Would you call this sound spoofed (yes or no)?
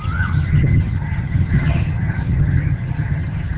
yes